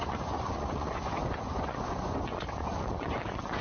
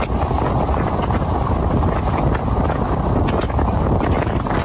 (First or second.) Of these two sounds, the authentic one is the second